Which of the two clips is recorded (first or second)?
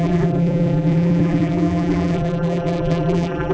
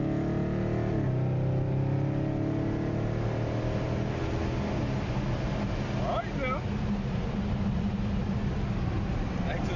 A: second